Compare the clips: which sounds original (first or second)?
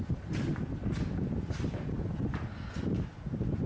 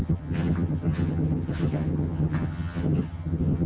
first